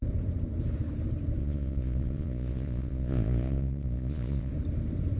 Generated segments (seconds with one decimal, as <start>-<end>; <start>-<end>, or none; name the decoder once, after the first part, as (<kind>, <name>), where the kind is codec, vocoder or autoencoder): 1.4-4.5 (vocoder, Vocos)